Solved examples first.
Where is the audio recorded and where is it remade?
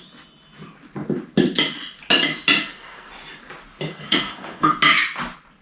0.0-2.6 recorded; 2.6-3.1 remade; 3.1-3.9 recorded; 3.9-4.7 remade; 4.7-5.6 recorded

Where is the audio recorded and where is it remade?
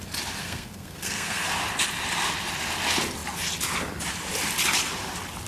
0.0-0.4 recorded; 0.4-1.5 remade; 1.5-5.5 recorded